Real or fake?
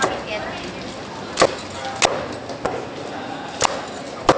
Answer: real